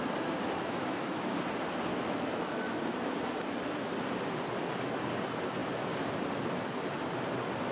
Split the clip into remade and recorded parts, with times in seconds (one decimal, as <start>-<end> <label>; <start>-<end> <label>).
0.0-0.4 recorded; 0.4-1.3 remade; 1.3-1.9 recorded; 1.9-2.8 remade; 2.8-7.7 recorded